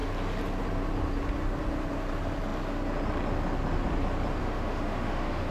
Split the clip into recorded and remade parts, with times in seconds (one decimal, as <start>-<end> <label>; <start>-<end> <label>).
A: 0.0-4.4 recorded; 4.4-5.5 remade